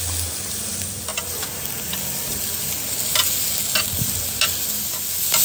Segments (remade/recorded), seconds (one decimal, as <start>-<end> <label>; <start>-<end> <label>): 0.0-5.4 recorded